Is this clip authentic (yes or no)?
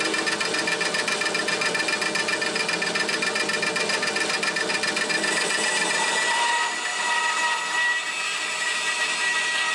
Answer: yes